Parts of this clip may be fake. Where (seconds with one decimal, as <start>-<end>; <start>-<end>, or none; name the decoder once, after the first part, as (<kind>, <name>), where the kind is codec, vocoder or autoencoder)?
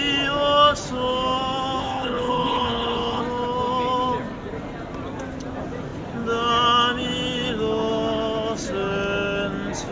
1.8-3.2 (codec, HILCodec)